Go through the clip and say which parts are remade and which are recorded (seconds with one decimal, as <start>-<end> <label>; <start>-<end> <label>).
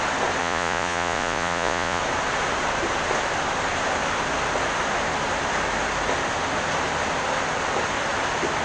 0.0-0.4 recorded; 0.4-2.0 remade; 2.0-8.6 recorded